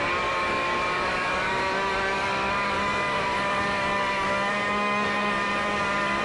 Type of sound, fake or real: fake